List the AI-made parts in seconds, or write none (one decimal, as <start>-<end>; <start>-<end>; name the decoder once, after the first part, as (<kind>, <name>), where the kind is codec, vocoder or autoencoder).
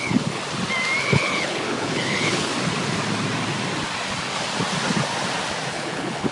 0.0-0.4 (codec, HILCodec); 1.0-2.5; 5.7-6.3